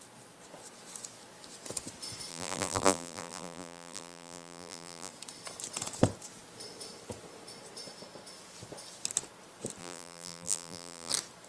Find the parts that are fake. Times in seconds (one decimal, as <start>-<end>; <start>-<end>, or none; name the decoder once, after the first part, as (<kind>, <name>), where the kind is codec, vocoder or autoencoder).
2.3-5.1 (vocoder, BigVGAN v2); 9.8-11.1